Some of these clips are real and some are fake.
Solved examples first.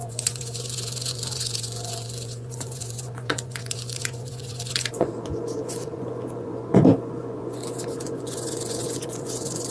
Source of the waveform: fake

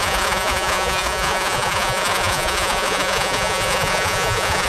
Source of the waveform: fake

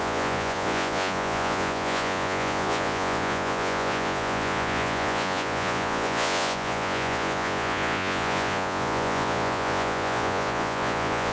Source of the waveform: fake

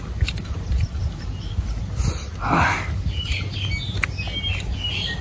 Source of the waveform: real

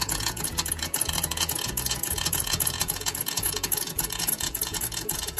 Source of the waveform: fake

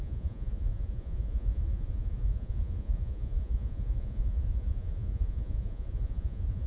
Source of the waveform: fake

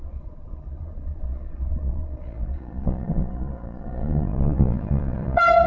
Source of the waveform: fake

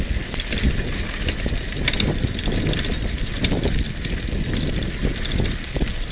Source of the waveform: real